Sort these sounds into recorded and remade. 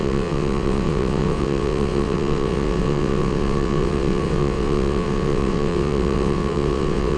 remade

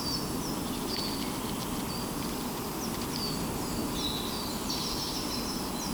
recorded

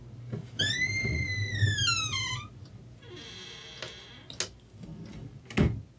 recorded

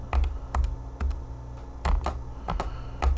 recorded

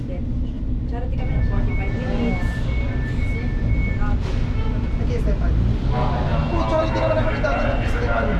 recorded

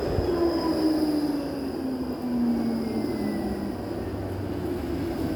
recorded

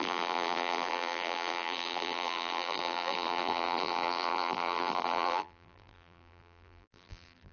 remade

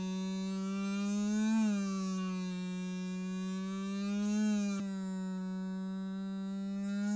recorded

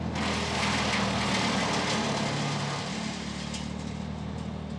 recorded